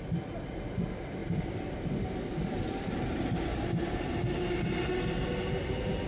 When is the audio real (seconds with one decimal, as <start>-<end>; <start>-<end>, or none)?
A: 0.0-6.1